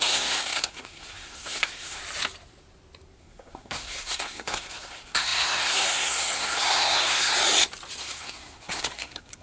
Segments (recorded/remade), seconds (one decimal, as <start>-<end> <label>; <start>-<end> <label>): 0.0-2.0 remade; 2.0-3.2 recorded; 3.2-7.3 remade; 7.3-8.0 recorded; 8.0-9.4 remade